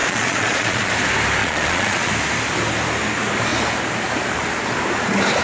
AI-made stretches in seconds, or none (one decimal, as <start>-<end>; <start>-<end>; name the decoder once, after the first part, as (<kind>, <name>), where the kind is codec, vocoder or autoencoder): 0.0-0.9 (vocoder, Vocos); 1.4-2.1